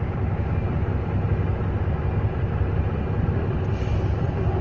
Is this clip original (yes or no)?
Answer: yes